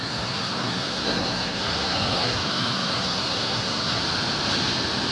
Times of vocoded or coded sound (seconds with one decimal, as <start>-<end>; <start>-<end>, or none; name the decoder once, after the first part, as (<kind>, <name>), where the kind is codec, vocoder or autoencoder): 0.0-4.0 (codec, SNAC)